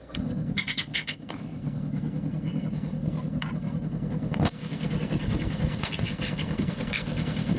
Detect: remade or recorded remade